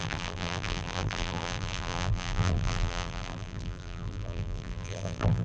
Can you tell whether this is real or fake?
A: fake